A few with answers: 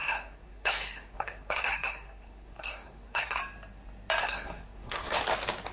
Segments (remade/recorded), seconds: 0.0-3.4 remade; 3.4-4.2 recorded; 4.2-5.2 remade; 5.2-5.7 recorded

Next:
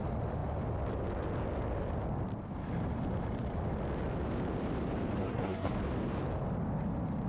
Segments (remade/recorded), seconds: 0.0-5.2 recorded; 5.2-5.7 remade; 5.7-7.3 recorded

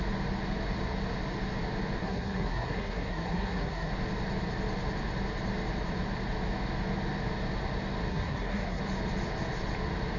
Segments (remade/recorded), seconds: 0.0-2.0 recorded; 2.0-3.9 remade; 3.9-8.1 recorded; 8.1-8.8 remade; 8.8-10.2 recorded

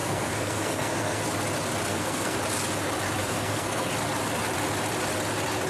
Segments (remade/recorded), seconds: 0.0-1.2 remade; 1.2-1.9 recorded; 1.9-2.4 remade; 2.4-3.2 recorded; 3.2-3.9 remade; 3.9-5.7 recorded

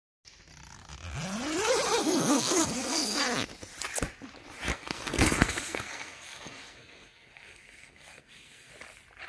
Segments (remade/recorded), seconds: 0.0-2.0 recorded; 2.0-3.2 remade; 3.2-4.7 recorded; 4.7-8.7 remade; 8.7-9.3 recorded

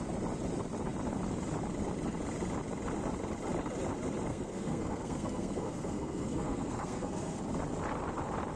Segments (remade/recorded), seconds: 0.0-4.3 recorded; 4.3-7.4 remade; 7.4-8.6 recorded